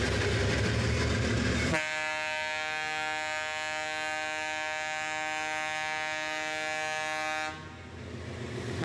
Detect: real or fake real